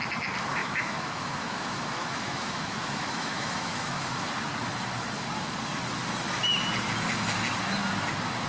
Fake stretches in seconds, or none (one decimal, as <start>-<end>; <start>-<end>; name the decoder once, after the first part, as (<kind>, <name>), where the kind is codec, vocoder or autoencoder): 0.6-4.3 (autoencoder, DAC-VAE)